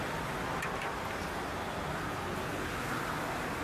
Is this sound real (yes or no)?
yes